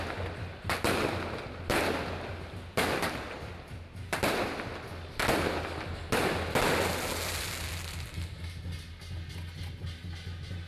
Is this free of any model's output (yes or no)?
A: yes